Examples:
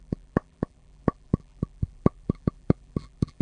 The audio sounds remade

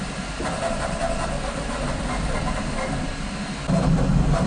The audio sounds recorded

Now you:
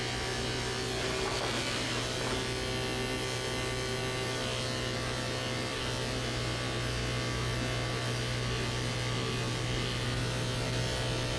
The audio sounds recorded